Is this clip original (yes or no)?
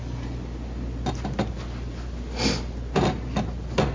yes